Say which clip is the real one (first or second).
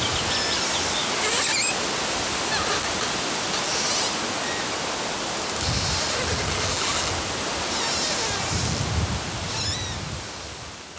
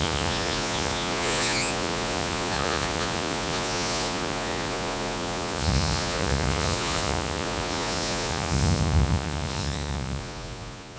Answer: first